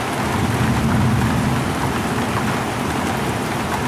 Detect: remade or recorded recorded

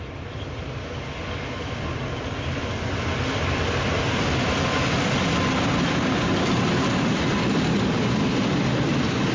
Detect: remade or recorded recorded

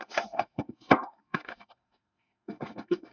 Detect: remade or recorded remade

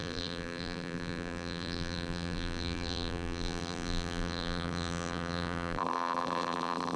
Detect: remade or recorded remade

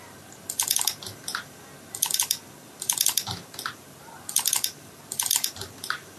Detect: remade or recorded remade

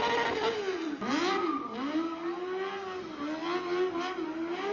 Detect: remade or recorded recorded